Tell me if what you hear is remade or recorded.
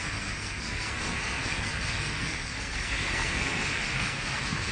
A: remade